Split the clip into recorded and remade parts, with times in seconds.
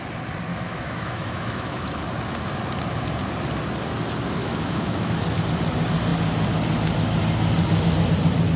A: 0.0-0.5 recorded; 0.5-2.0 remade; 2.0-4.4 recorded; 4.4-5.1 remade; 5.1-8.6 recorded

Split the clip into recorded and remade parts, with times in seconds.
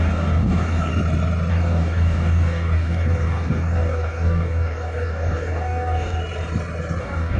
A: 0.0-0.9 remade; 0.9-1.5 recorded; 1.5-6.2 remade; 6.2-7.0 recorded; 7.0-7.4 remade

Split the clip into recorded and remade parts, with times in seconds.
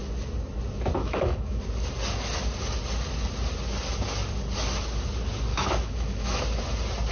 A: 0.0-1.0 recorded; 1.0-1.6 remade; 1.6-5.5 recorded; 5.5-6.4 remade; 6.4-7.1 recorded